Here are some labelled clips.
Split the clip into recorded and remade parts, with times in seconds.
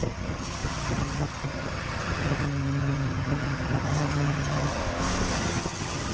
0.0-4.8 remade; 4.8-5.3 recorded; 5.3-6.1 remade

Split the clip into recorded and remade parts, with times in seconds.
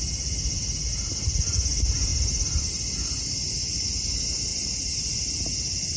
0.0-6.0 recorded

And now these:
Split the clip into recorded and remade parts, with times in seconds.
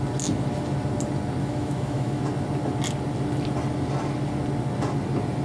0.0-1.4 recorded; 1.4-2.2 remade; 2.2-5.4 recorded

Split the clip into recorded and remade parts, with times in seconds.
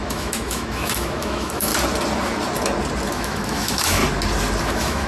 0.0-1.7 remade; 1.7-3.1 recorded; 3.1-4.0 remade; 4.0-4.6 recorded; 4.6-5.1 remade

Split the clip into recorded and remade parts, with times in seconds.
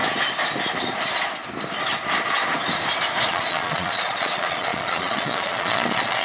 0.0-3.3 recorded; 3.3-6.2 remade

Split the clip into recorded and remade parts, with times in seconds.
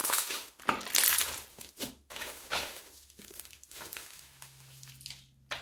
0.0-0.6 remade; 0.6-1.5 recorded; 1.5-4.9 remade; 4.9-5.6 recorded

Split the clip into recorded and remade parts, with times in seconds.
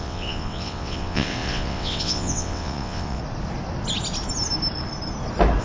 0.0-3.2 remade; 3.2-5.6 recorded